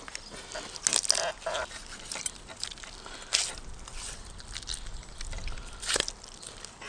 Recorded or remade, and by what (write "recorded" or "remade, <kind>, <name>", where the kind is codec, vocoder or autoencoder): recorded